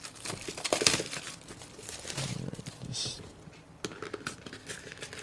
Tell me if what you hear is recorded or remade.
remade